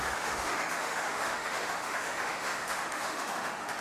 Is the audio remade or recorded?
remade